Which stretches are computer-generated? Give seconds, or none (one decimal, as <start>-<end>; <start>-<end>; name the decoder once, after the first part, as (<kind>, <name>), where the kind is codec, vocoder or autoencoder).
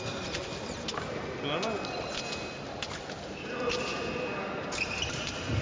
none